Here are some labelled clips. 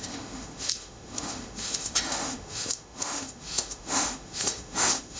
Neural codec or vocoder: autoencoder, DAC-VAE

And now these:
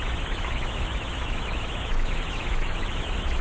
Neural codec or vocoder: autoencoder, DAC-VAE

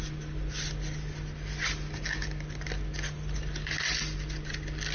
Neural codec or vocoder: none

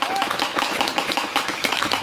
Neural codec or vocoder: autoencoder, DAC-VAE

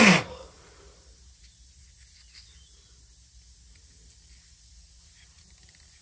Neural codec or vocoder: none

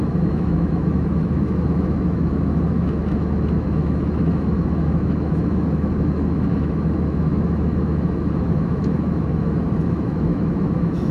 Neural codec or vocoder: autoencoder, DAC-VAE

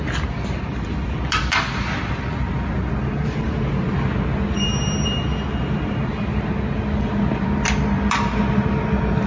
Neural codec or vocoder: none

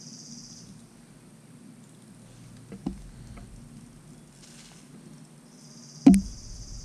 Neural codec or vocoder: none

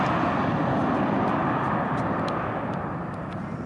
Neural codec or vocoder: none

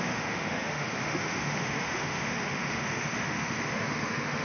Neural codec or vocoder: autoencoder, DAC-VAE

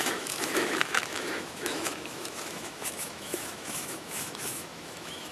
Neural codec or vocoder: autoencoder, DAC-VAE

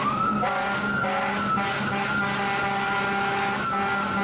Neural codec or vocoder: none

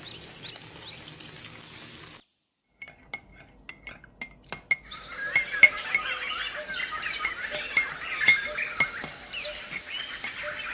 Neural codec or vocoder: none